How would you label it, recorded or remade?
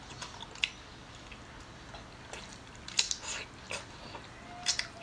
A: recorded